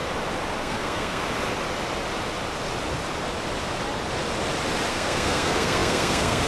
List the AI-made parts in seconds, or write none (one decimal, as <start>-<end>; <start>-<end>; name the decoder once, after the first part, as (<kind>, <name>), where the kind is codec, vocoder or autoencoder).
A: 0.6-1.2 (codec, SNAC); 4.9-6.5